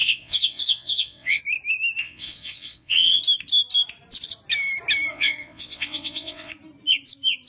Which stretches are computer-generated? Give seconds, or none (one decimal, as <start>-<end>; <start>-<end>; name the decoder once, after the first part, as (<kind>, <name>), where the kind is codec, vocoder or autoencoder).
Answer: 0.0-1.4 (vocoder, WaveNeXt); 2.0-3.2; 5.1-6.5